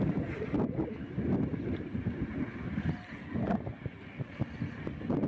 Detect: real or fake real